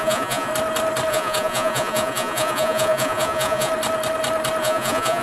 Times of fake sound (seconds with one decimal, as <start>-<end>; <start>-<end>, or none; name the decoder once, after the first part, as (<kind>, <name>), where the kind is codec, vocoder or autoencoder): 0.0-0.5 (vocoder, Vocos); 1.1-3.7; 4.6-5.2